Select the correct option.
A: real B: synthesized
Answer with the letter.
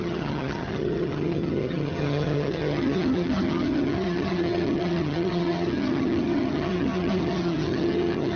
B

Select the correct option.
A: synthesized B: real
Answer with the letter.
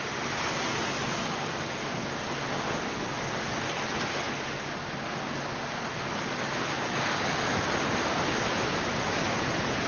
B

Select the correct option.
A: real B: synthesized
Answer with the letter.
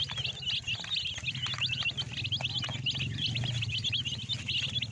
A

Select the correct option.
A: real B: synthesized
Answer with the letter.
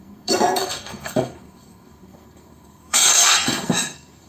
B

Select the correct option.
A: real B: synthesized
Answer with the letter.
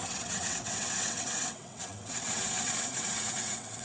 B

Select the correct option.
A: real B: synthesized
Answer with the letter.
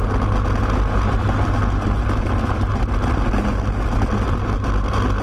A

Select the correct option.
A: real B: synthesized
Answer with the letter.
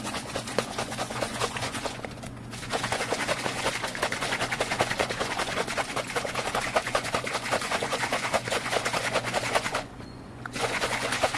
B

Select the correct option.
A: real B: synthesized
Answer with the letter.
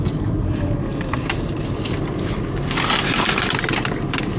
A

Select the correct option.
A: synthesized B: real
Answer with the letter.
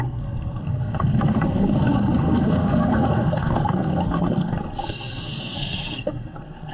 A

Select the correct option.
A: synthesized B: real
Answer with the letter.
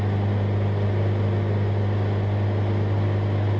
B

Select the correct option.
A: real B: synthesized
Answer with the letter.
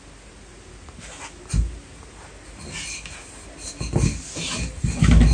A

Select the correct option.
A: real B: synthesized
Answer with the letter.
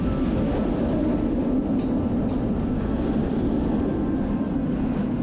A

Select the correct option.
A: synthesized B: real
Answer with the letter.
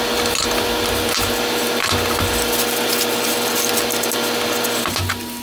B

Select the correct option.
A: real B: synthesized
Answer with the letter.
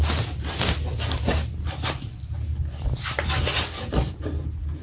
A